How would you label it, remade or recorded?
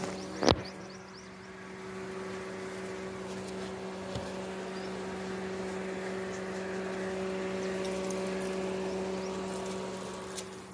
recorded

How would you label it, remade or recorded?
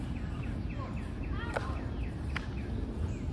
recorded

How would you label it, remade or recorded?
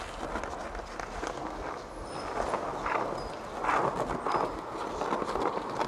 recorded